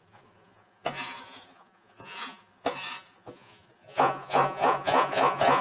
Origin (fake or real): fake